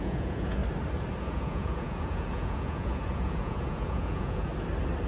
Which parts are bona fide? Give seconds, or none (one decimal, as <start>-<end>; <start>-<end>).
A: 0.6-1.2; 4.5-5.1

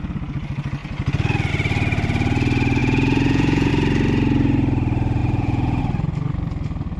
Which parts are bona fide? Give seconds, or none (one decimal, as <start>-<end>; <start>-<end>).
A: 0.0-2.8; 3.7-5.2; 5.8-7.0

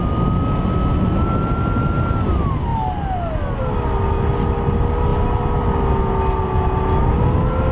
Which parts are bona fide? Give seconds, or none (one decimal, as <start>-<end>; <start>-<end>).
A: 0.0-7.7

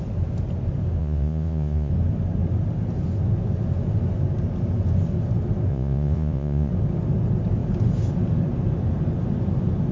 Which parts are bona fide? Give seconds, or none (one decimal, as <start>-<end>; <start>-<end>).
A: 0.0-1.0; 1.9-5.7; 6.7-9.9

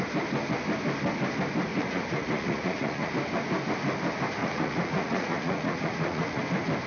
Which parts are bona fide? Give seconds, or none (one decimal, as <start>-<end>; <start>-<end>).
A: 0.0-1.7; 3.1-4.4; 6.4-6.9